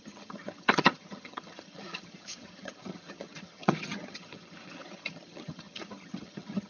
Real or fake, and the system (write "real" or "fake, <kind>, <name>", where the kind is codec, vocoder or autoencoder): fake, vocoder, HiFi-GAN